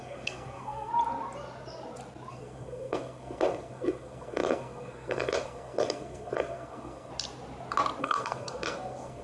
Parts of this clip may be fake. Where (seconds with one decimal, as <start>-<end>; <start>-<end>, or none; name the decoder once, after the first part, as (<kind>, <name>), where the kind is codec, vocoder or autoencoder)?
0.0-0.9 (codec, SNAC); 2.3-7.1; 8.0-9.2